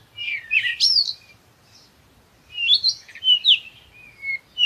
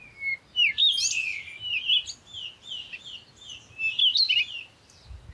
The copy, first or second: first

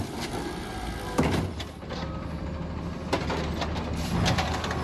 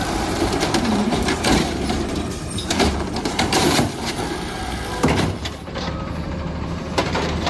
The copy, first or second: second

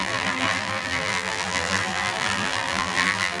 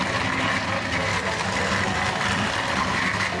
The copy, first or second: first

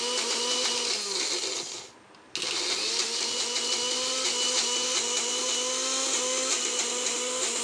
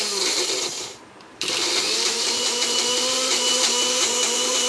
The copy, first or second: second